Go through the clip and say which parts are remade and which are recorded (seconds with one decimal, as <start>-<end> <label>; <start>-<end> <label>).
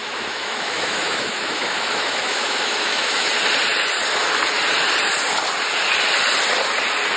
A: 0.0-3.3 remade; 3.3-7.2 recorded